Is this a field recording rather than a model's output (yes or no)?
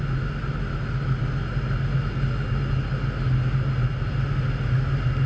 yes